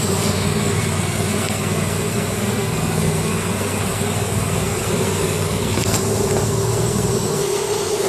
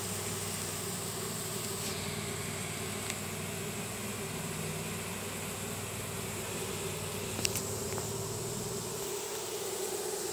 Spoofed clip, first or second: first